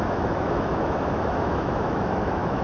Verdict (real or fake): fake